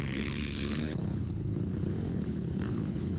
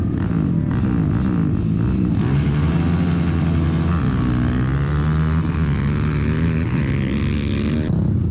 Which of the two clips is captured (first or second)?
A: second